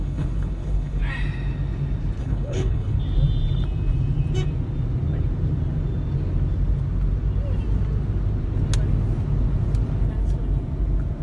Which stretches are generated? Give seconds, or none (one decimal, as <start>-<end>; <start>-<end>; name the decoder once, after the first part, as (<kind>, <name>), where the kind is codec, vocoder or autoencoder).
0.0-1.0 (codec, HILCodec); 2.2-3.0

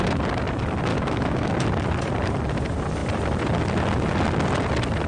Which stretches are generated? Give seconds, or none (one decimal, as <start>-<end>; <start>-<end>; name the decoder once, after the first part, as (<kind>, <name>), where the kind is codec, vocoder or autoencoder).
0.9-1.5 (autoencoder, DAC-VAE)

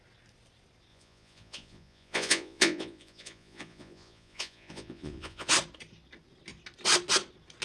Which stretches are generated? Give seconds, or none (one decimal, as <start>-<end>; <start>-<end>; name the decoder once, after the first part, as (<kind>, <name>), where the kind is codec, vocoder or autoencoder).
0.9-5.5 (vocoder, Vocos)